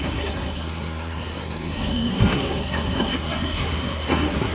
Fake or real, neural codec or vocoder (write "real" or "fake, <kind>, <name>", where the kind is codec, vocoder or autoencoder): fake, codec, SNAC